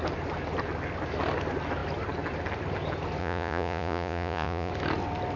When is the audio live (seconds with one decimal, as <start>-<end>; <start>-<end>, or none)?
0.0-3.2; 4.7-5.4

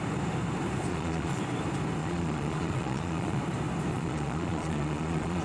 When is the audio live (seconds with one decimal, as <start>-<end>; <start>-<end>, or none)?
0.0-0.9; 1.4-2.0; 3.4-3.9

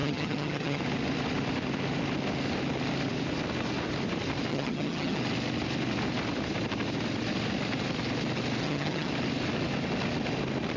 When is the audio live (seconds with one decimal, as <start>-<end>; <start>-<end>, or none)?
0.8-4.5; 5.2-8.6; 9.1-10.8

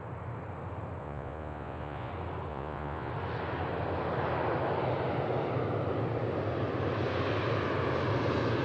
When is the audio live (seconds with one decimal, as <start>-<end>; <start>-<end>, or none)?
0.0-1.0; 2.1-2.5; 3.1-8.6

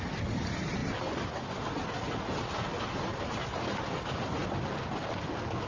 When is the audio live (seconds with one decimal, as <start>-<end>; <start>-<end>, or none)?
0.0-5.7

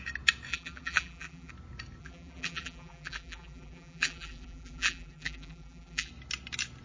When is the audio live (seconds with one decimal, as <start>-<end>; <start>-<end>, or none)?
0.0-0.5; 1.5-2.0; 6.1-6.8